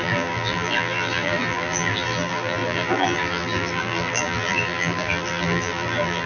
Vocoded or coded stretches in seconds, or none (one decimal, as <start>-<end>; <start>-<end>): 0.0-6.3